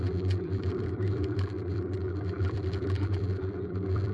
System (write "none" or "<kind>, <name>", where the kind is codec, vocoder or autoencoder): vocoder, BigVGAN v2